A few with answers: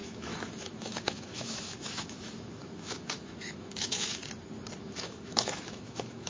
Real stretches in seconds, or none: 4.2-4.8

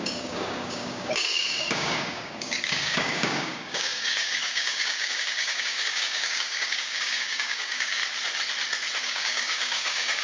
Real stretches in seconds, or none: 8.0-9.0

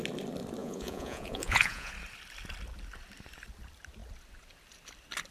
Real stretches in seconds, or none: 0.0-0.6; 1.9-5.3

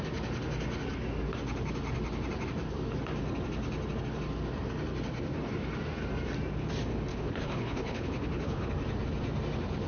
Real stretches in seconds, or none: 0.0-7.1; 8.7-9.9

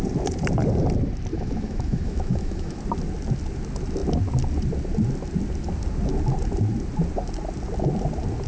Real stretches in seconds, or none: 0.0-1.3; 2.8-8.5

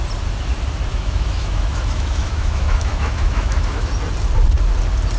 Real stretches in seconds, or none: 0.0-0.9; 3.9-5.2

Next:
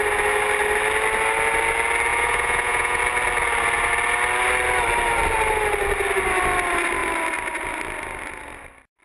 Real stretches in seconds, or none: 0.0-2.1; 3.0-9.0

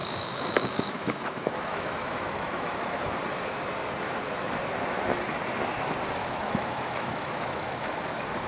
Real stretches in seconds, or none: 3.0-6.2; 7.9-8.5